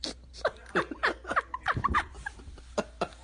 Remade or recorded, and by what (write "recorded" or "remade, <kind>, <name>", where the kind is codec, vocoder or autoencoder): remade, vocoder, BigVGAN v2